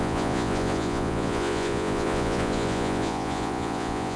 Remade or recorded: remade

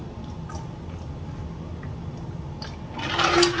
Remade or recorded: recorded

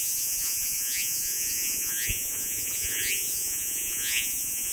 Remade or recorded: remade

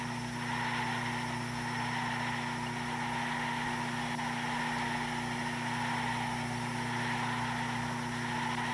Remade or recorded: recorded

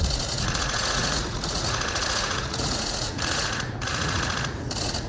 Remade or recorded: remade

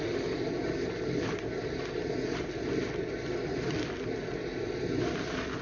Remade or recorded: recorded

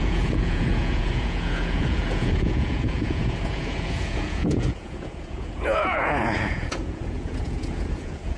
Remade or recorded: remade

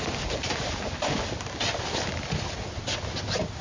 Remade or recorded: recorded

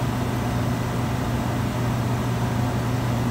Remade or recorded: recorded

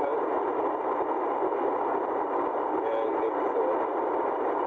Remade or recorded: recorded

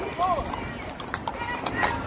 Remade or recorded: recorded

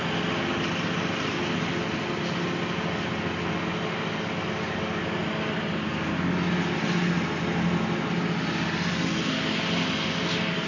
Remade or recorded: recorded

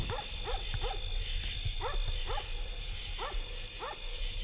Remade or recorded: recorded